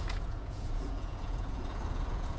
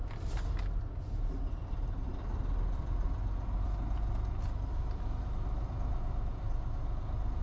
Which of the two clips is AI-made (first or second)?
first